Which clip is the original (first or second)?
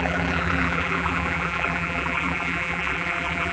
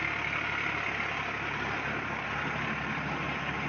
second